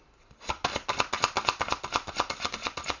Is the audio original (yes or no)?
yes